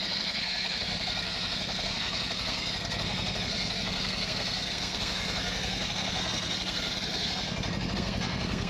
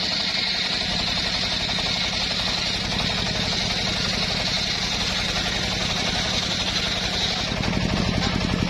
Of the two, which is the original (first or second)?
second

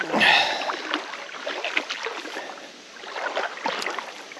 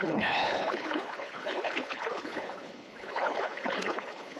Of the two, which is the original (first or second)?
first